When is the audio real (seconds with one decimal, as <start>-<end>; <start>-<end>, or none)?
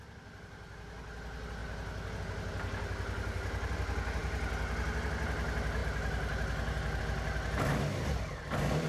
0.0-8.9